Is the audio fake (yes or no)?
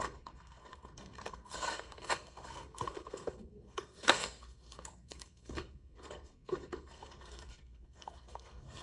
yes